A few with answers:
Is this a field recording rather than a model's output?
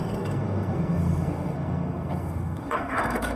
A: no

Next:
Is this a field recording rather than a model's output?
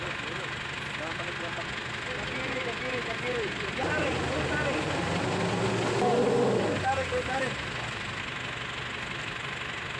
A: yes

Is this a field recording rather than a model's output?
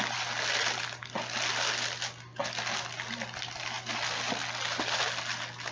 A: yes